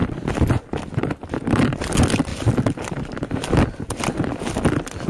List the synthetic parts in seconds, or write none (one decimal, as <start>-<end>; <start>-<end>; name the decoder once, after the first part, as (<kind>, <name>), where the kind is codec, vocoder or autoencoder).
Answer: none